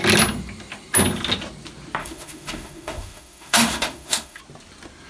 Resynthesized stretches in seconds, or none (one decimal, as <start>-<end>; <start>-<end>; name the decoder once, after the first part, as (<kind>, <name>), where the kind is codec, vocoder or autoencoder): 2.0-4.4 (autoencoder, DAC-VAE)